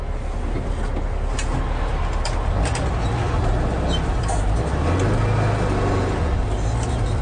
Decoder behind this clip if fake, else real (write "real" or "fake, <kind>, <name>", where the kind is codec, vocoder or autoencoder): real